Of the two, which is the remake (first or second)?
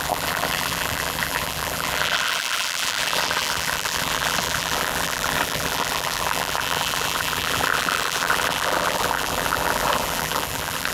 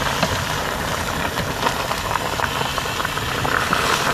first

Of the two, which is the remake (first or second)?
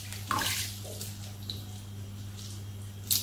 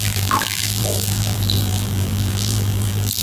second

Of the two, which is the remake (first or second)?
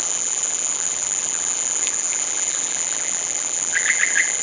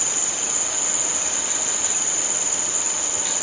first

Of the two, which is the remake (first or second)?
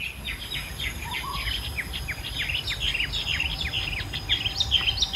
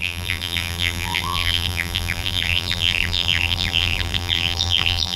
second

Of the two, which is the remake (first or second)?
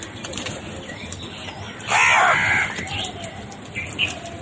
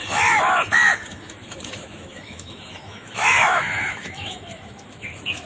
second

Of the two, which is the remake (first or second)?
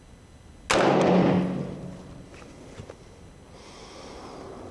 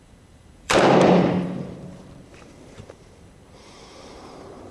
second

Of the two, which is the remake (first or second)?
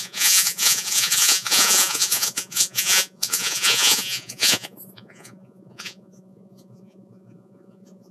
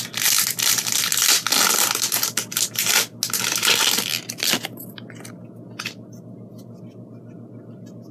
first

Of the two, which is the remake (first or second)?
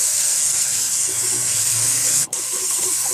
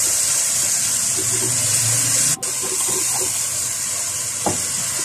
first